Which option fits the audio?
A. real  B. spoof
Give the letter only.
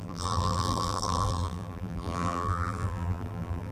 B